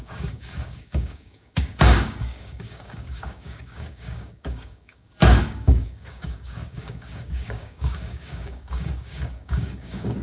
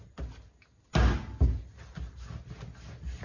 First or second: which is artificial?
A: first